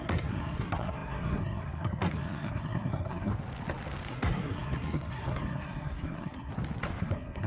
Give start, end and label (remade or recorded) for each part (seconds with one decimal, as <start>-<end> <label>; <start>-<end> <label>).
0.0-3.3 remade; 3.3-4.1 recorded; 4.1-6.5 remade; 6.5-7.0 recorded; 7.0-7.5 remade